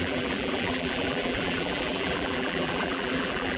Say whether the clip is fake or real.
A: fake